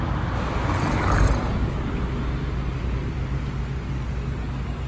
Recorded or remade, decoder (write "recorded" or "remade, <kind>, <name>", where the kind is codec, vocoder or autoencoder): recorded